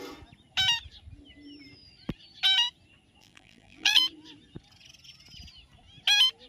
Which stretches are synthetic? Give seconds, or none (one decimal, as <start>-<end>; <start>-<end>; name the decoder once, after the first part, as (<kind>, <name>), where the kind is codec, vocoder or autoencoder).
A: 3.2-4.0 (vocoder, BigVGAN v2)

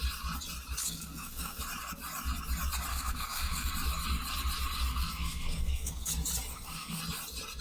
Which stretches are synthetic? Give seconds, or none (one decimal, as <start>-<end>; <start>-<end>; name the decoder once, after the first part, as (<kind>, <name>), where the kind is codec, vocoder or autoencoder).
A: 0.8-1.6 (codec, SNAC); 2.9-3.7; 4.9-6.1; 6.5-7.0

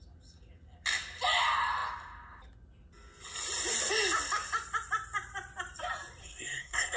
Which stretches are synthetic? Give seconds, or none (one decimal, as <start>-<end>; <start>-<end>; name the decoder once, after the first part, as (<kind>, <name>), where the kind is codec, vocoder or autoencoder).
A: 6.2-7.0 (codec, SNAC)

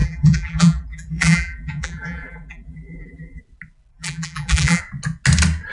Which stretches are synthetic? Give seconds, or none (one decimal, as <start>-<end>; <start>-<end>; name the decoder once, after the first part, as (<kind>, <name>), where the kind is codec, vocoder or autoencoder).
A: 0.0-3.4 (vocoder, BigVGAN v2); 3.9-4.8

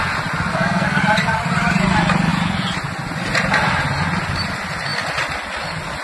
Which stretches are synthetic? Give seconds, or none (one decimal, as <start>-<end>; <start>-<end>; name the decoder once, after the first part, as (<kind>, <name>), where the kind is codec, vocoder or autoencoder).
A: 0.5-1.0 (codec, SNAC)